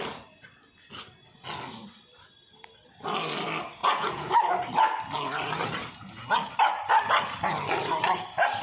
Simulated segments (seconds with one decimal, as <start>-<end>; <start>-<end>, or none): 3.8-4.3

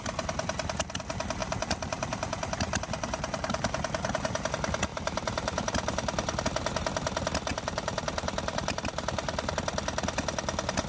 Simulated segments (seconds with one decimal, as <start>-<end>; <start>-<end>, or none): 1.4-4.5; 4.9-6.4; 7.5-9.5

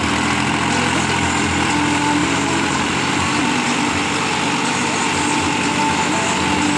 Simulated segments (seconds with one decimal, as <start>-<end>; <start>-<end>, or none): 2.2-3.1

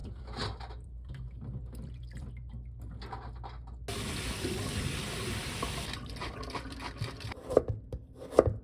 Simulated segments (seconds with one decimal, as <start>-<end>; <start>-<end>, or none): 0.0-2.3; 5.4-7.4